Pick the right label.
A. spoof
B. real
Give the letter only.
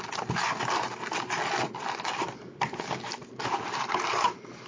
B